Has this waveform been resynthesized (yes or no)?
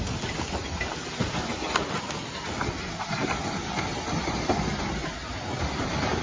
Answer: no